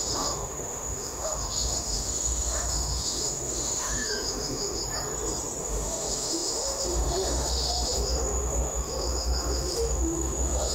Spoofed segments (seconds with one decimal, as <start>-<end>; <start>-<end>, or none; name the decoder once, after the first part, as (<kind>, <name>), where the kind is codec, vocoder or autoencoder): 0.0-4.8 (autoencoder, DAC-VAE); 5.6-10.7